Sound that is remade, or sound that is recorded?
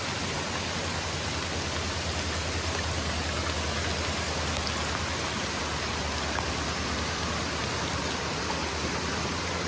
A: recorded